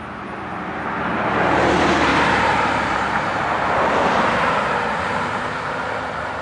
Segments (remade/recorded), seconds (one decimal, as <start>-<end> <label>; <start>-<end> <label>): 0.0-2.1 recorded; 2.1-3.4 remade; 3.4-6.4 recorded